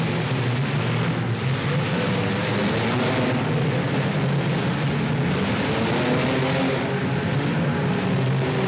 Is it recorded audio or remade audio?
recorded